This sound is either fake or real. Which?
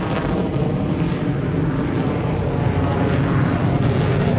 real